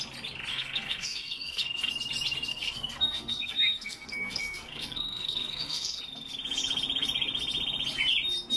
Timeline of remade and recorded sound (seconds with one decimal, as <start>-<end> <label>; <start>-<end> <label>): 0.0-0.5 recorded; 0.5-1.9 remade; 1.9-2.5 recorded; 2.5-6.0 remade; 6.0-8.6 recorded